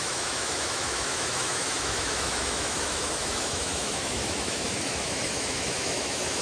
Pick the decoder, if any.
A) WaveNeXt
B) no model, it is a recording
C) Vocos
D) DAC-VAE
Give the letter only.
D